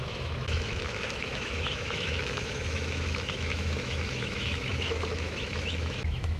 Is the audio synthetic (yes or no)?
yes